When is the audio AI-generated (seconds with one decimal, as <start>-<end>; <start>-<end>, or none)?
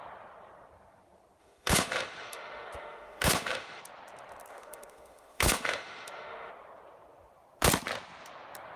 1.4-3.8; 4.5-6.5